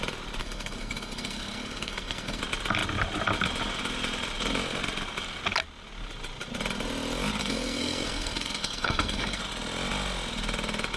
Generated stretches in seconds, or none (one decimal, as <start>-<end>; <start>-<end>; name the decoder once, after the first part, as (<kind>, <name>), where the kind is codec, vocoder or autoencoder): 0.4-2.4 (codec, SNAC); 7.4-9.4